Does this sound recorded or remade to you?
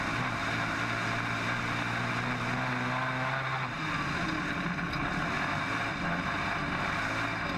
recorded